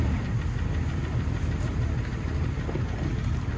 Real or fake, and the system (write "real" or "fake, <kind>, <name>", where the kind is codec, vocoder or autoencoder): real